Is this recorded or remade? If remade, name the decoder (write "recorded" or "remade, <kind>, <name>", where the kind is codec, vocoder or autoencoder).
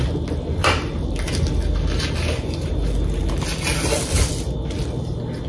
recorded